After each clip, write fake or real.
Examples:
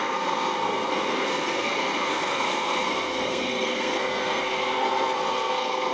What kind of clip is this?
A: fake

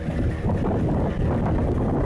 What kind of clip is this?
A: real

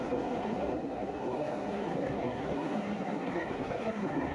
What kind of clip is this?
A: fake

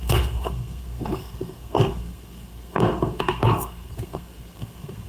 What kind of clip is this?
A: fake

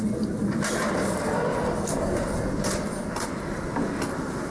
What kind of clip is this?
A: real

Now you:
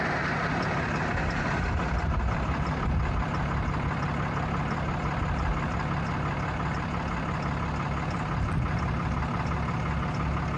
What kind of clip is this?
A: real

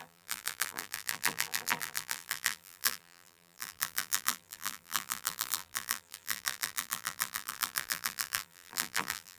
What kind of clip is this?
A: fake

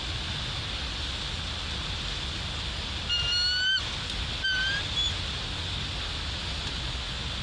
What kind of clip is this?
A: real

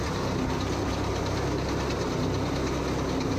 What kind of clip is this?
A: real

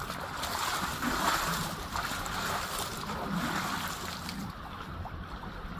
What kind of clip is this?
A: real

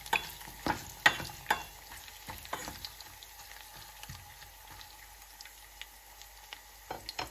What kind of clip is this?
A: real